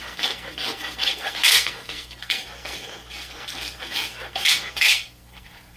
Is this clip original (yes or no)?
no